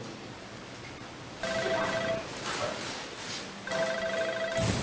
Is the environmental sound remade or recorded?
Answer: recorded